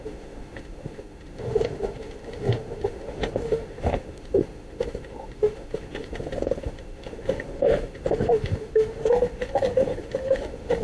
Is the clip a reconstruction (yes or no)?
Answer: yes